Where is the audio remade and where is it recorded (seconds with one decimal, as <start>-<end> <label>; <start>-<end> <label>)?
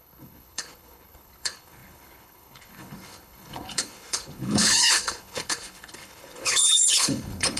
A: 0.0-7.6 remade